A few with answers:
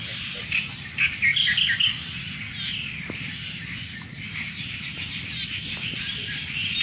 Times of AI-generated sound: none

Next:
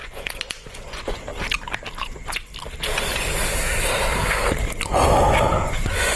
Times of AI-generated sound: 0.0-1.3 (vocoder, Vocos); 2.0-2.5; 5.6-6.2

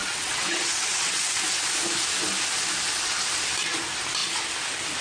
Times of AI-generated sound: 0.0-1.4 (vocoder, WaveNeXt)

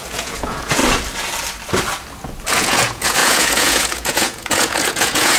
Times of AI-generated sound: 0.0-0.8 (vocoder, Vocos); 2.5-5.4

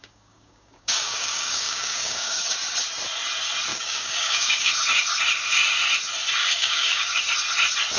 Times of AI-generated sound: 0.0-2.4 (codec, DAC); 3.7-4.7; 6.4-7.2

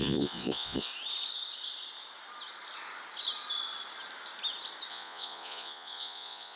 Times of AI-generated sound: 0.0-0.9 (vocoder, Vocos); 4.9-6.6

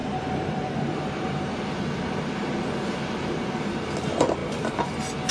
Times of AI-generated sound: 0.0-1.5 (vocoder, BigVGAN v2)

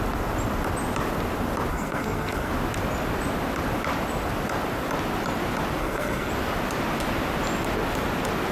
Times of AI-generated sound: 1.7-2.5 (codec, SNAC); 5.8-6.3